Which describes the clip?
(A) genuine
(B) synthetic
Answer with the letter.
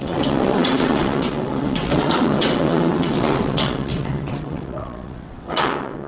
B